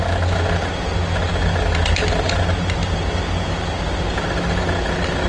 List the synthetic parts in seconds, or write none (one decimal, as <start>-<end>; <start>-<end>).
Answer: 2.8-4.6